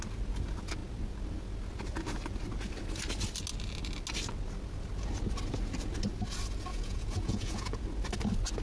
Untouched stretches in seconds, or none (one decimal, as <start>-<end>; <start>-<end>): 0.0-6.7; 7.8-8.6